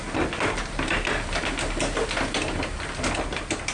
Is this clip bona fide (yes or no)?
yes